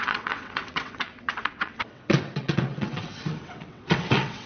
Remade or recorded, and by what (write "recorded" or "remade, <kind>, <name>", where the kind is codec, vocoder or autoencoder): remade, vocoder, WaveNeXt